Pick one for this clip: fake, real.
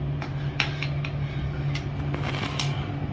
real